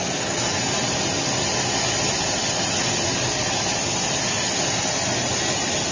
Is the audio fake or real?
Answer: real